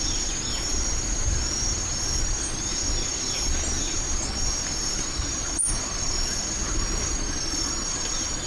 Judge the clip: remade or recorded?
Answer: recorded